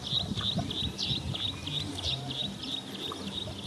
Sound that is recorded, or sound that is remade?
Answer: recorded